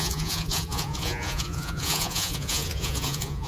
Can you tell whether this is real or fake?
fake